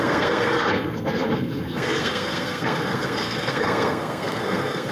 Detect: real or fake fake